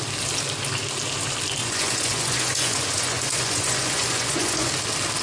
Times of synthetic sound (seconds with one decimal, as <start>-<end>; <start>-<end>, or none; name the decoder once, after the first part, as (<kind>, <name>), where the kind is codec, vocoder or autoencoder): 1.6-4.7 (vocoder, Vocos)